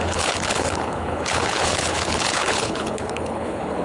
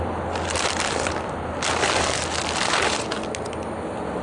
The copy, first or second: first